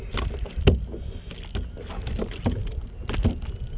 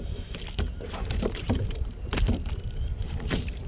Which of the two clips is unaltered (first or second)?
first